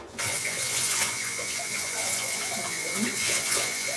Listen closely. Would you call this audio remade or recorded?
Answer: remade